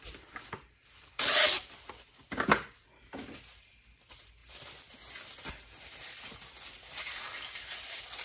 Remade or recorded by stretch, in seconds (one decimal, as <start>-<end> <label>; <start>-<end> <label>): 0.0-8.2 remade